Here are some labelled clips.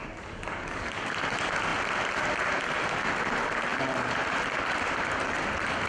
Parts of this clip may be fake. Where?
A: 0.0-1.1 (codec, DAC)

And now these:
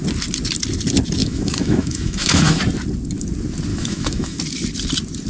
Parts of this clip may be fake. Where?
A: 1.2-2.6 (autoencoder, DAC-VAE); 3.7-4.4

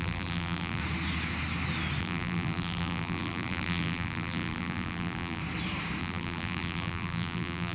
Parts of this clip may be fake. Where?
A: 0.0-0.8 (vocoder, BigVGAN v2); 2.0-5.4; 6.0-7.7

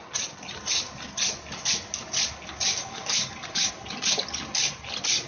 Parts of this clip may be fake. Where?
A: 2.8-3.7 (codec, DAC)

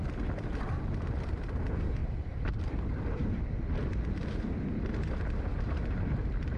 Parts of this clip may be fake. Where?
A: 2.0-3.4 (vocoder, BigVGAN v2)